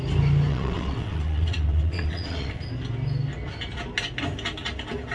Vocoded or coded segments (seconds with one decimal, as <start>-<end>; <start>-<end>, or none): 0.5-2.6

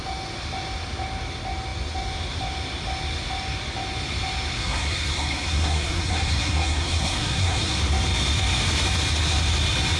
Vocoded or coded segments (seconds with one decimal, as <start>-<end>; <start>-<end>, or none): 4.6-7.8

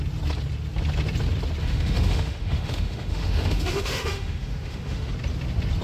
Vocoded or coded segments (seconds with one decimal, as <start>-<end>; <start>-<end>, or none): 1.6-5.1

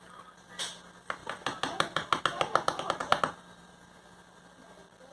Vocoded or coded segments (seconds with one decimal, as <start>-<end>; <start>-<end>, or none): none